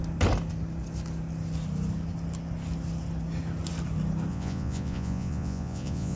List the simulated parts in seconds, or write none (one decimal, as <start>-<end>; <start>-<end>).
4.3-6.2